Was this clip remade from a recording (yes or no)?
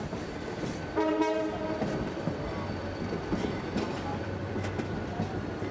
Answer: yes